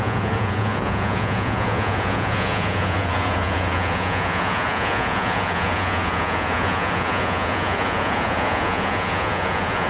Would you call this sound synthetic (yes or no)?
yes